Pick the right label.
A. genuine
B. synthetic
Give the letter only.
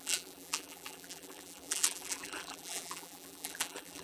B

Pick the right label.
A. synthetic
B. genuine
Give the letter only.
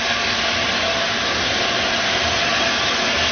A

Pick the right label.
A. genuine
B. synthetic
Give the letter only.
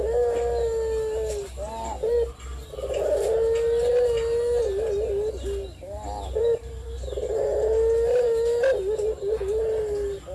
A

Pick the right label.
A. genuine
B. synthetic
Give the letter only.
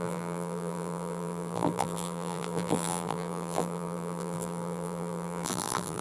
B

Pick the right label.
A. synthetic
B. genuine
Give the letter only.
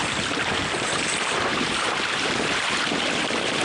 A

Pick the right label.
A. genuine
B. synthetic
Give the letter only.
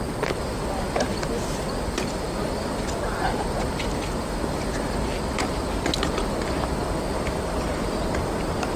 A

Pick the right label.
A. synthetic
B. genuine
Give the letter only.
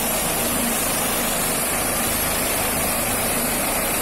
A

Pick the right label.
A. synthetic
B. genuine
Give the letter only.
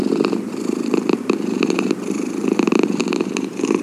A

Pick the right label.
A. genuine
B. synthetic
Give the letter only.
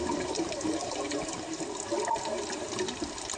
A